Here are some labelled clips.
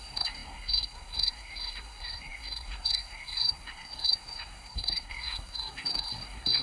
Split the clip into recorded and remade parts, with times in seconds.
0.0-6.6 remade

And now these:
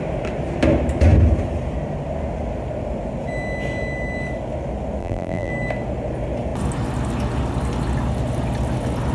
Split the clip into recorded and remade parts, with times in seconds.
0.0-5.0 recorded; 5.0-5.5 remade; 5.5-9.1 recorded

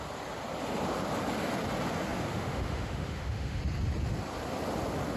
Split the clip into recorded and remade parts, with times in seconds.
0.0-2.3 recorded; 2.3-3.6 remade; 3.6-5.2 recorded

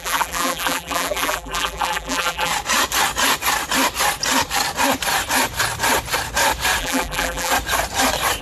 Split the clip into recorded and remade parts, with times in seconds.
0.0-2.5 remade; 2.5-6.8 recorded; 6.8-7.5 remade; 7.5-8.4 recorded

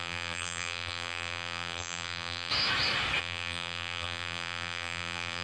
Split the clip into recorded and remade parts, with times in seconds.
0.0-2.5 remade; 2.5-3.2 recorded; 3.2-5.4 remade